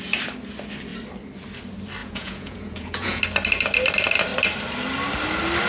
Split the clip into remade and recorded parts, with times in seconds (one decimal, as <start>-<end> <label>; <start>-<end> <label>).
0.0-2.0 recorded; 2.0-3.2 remade; 3.2-5.7 recorded